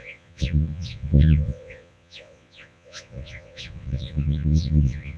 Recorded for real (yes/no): no